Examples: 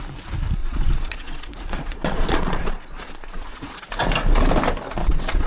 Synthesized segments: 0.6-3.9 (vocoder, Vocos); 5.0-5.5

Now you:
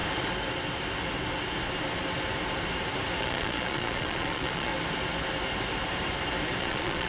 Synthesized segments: 3.2-4.7 (vocoder, Vocos); 6.6-7.1

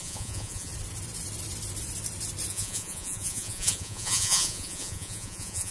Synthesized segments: 0.0-0.7 (vocoder, Vocos); 2.5-5.7

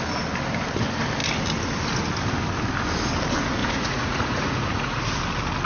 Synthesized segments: 3.6-5.0 (vocoder, Vocos)